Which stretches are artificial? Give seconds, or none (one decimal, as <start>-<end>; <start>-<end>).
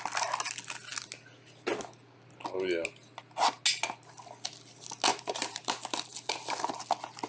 5.1-6.7